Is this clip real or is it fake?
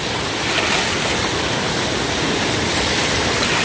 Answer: real